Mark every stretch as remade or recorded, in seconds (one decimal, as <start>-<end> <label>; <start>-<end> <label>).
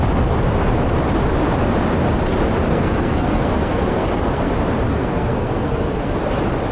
0.0-2.7 recorded; 2.7-4.5 remade; 4.5-4.9 recorded; 4.9-6.2 remade; 6.2-6.7 recorded